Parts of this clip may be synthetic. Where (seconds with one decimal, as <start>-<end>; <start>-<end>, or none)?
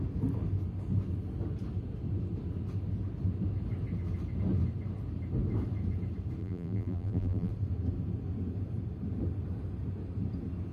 6.4-7.5